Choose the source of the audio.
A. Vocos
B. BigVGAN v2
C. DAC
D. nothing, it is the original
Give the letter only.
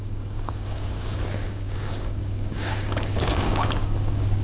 C